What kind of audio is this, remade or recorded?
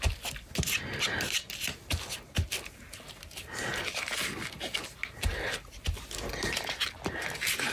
recorded